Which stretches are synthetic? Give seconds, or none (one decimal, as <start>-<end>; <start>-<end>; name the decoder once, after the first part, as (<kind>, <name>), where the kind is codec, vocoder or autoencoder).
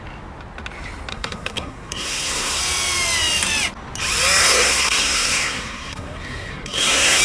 1.1-2.6 (codec, SNAC); 4.4-7.2